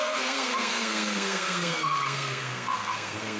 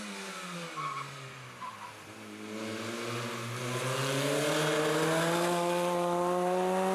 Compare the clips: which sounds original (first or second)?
second